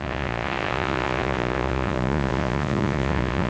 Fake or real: fake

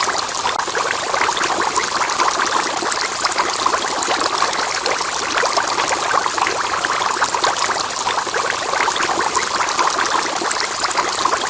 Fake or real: real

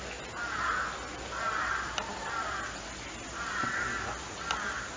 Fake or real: real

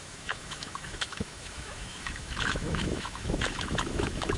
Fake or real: fake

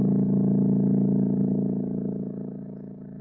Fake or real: real